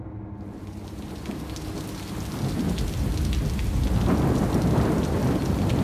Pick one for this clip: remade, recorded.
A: recorded